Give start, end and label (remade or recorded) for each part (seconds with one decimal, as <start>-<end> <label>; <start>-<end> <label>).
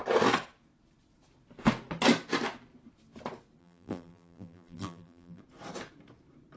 0.0-3.6 recorded; 3.6-5.4 remade; 5.4-6.6 recorded